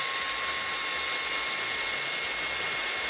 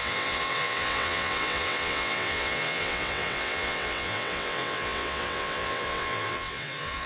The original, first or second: first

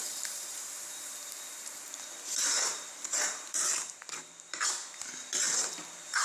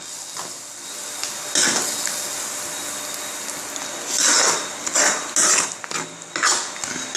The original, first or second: second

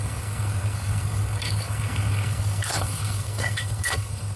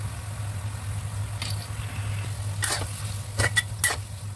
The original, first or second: second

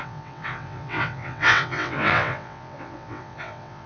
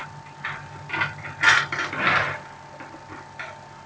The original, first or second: second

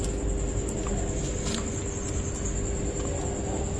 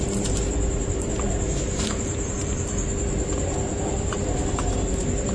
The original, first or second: first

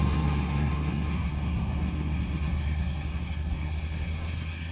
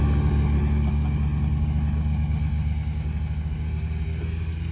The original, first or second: second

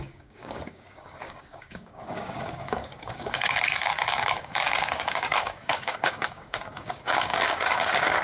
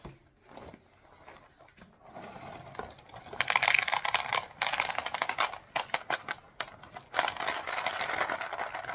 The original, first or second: second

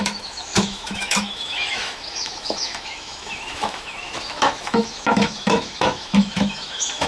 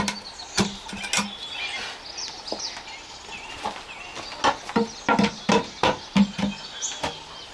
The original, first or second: second